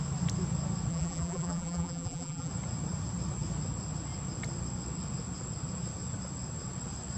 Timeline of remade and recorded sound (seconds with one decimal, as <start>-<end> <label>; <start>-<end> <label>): 0.0-0.9 recorded; 0.9-2.5 remade; 2.5-7.2 recorded